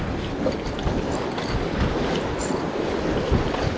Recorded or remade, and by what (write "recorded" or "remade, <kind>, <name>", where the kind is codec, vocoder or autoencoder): recorded